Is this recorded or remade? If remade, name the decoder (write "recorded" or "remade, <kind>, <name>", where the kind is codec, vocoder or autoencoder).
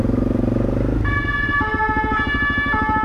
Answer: recorded